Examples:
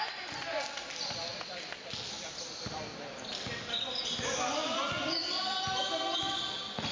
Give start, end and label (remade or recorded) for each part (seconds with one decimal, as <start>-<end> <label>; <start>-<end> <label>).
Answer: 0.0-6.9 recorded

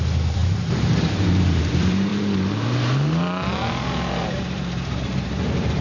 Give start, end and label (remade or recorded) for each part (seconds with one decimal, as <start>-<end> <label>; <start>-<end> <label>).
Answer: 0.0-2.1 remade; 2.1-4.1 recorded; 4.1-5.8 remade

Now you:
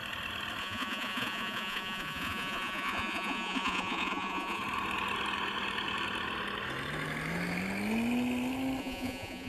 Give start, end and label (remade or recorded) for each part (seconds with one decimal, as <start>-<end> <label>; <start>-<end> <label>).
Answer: 0.0-0.6 recorded; 0.6-4.6 remade; 4.6-8.8 recorded; 8.8-9.5 remade